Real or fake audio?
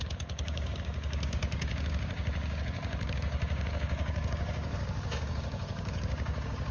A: fake